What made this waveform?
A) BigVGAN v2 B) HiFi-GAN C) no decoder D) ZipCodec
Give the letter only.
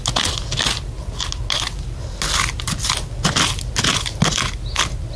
C